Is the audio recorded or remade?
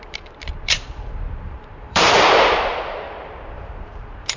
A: remade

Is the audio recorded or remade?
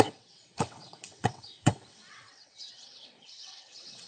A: remade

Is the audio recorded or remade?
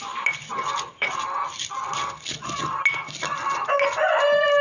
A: recorded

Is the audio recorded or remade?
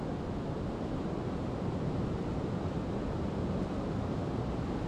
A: recorded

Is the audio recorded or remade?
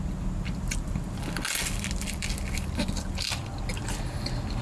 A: recorded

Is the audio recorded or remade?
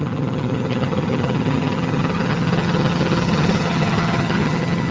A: remade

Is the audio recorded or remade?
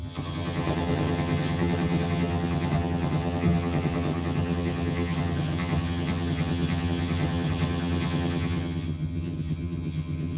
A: remade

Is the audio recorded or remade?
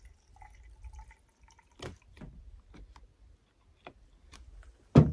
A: recorded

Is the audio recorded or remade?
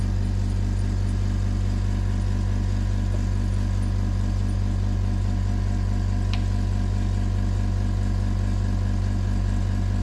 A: recorded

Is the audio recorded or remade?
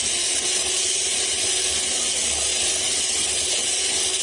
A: recorded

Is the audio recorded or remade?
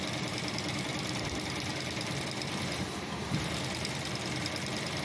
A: recorded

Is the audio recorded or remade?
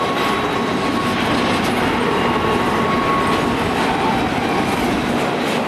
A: recorded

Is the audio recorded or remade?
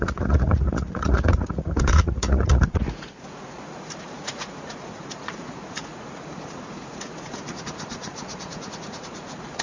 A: remade